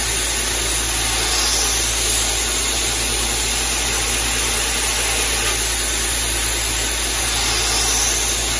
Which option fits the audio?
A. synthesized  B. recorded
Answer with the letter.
B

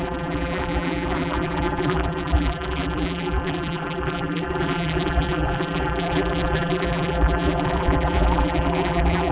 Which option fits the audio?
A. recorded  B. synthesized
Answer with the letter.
B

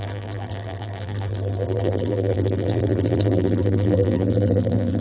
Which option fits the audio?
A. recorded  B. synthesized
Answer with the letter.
B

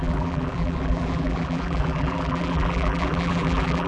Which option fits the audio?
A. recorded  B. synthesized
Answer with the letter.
B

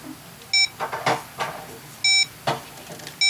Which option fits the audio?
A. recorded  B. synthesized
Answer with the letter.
A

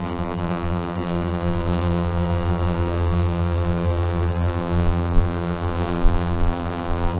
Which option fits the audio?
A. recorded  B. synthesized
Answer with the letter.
B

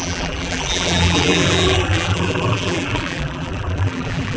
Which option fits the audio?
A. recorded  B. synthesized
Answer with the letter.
B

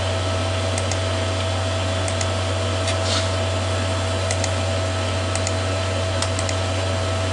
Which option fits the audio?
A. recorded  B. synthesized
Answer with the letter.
A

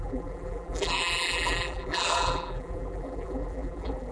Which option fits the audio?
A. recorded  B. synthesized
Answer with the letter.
B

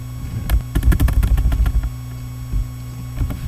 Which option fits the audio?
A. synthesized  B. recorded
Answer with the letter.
B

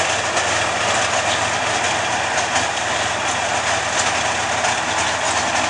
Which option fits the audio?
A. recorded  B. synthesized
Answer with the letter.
A